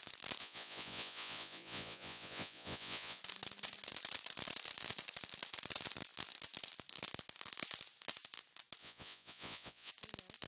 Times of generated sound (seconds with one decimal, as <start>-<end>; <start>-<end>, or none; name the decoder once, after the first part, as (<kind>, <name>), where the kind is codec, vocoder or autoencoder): 0.4-3.2 (vocoder, Vocos); 8.8-9.9